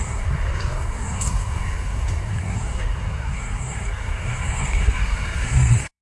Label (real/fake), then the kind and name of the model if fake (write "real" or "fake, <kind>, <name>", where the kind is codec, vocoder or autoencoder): fake, codec, SNAC